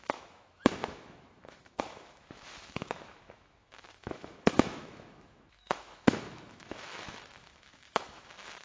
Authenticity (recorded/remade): remade